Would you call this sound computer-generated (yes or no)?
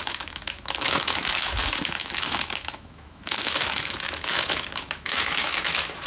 yes